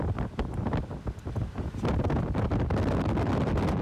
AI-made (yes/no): no